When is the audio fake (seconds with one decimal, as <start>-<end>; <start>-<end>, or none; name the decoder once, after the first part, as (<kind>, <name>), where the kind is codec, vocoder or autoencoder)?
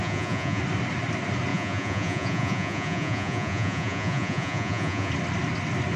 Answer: 0.0-0.6 (vocoder, Vocos); 1.5-5.1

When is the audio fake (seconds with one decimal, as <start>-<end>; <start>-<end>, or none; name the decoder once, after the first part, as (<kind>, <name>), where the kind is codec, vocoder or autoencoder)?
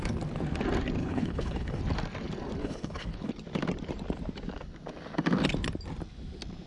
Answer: 1.0-1.8 (codec, HILCodec); 2.6-3.3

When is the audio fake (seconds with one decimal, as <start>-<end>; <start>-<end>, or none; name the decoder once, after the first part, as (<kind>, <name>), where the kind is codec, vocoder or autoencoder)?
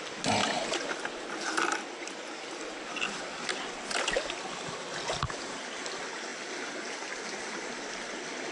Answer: none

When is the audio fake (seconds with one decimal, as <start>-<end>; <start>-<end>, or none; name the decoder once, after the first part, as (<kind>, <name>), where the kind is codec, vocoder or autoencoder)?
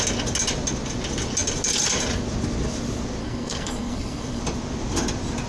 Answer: 3.2-4.4 (codec, SNAC)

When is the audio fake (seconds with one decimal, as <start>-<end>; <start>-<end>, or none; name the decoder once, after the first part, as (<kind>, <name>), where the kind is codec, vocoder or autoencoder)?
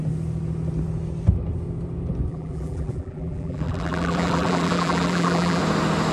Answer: 2.3-5.6 (vocoder, BigVGAN v2)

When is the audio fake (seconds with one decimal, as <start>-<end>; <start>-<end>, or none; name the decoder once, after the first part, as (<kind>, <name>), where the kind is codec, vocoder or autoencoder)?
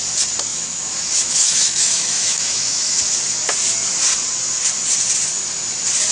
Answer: 0.5-3.0 (autoencoder, DAC-VAE)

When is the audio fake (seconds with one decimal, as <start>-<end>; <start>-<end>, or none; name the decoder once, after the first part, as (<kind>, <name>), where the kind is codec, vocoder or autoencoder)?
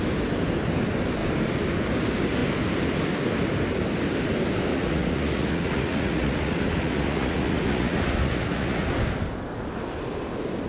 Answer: 4.7-8.9 (vocoder, Vocos)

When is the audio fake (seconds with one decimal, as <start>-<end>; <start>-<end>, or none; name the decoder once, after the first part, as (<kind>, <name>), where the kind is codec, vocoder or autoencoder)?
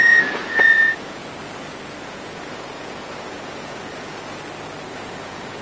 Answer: 0.0-1.2 (vocoder, Vocos); 2.0-4.1; 4.8-5.6